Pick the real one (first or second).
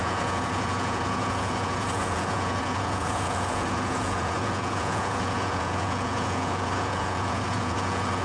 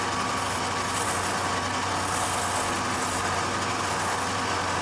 second